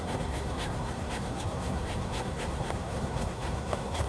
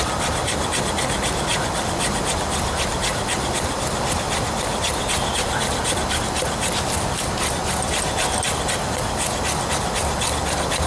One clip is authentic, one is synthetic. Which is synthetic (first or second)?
first